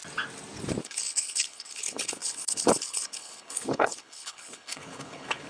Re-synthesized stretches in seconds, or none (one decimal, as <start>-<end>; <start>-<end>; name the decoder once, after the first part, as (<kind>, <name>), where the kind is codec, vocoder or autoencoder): 0.8-5.5 (codec, HILCodec)